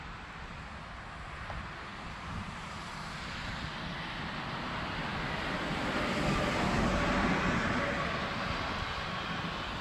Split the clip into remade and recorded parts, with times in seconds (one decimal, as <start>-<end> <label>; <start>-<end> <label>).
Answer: 0.0-1.9 recorded; 1.9-3.1 remade; 3.1-9.8 recorded